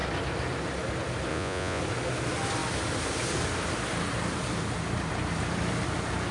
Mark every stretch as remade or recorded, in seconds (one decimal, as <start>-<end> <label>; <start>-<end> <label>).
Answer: 0.0-1.3 recorded; 1.3-1.8 remade; 1.8-6.3 recorded